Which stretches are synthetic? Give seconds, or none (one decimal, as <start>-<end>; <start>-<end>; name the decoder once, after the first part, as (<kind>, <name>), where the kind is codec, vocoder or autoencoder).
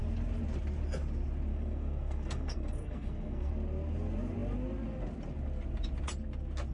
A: 1.5-3.5 (codec, SNAC)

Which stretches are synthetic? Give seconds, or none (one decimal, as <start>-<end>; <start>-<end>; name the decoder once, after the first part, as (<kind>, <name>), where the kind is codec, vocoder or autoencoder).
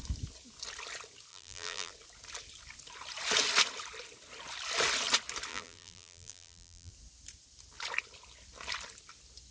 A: 1.3-1.9 (vocoder, BigVGAN v2); 5.5-6.9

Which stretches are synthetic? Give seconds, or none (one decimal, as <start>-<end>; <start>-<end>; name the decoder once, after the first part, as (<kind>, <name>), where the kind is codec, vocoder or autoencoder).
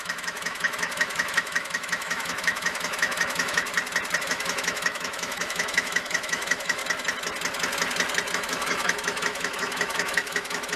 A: 0.0-3.7 (autoencoder, DAC-VAE); 4.2-6.8; 8.3-10.8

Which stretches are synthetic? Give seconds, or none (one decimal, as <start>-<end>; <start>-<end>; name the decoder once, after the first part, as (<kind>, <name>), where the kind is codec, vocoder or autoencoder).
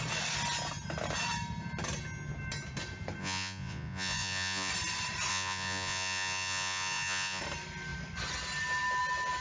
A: 3.2-4.7 (vocoder, Vocos); 5.3-7.4